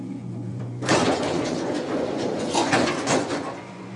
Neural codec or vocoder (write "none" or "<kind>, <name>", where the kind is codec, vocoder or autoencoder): vocoder, Vocos